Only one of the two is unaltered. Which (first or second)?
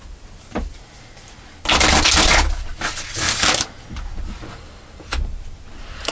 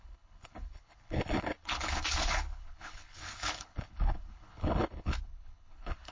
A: first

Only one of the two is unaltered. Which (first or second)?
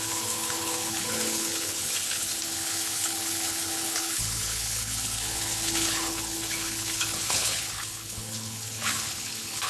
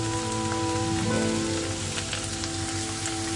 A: second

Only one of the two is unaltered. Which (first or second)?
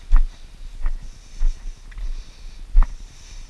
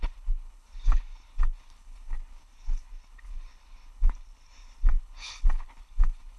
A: first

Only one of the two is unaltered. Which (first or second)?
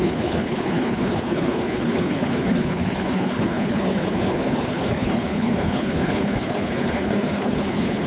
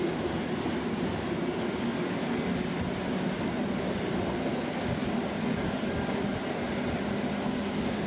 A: second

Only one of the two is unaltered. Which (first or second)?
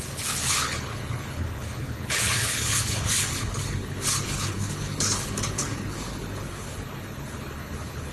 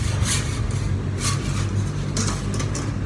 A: second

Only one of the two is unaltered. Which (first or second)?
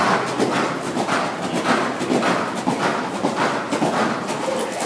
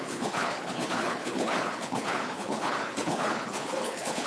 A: first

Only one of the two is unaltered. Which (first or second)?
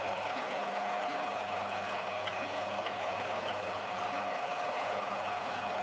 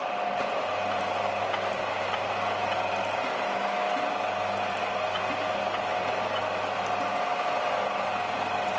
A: second